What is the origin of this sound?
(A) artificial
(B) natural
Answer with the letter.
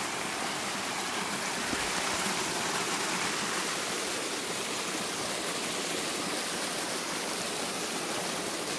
B